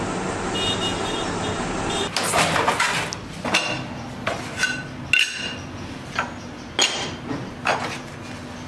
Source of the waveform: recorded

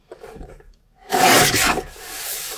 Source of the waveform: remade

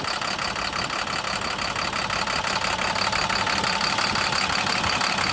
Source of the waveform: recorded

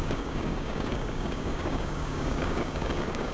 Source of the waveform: remade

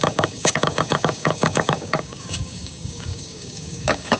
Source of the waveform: remade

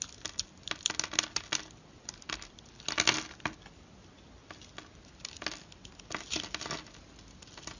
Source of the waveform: recorded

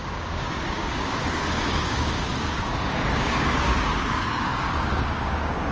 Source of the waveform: remade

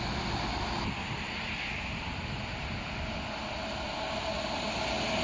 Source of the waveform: recorded